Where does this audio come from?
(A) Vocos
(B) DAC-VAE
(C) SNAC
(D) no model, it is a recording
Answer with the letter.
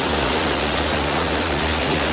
A